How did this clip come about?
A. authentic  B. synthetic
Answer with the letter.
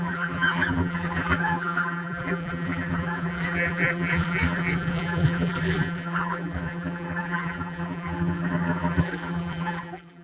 B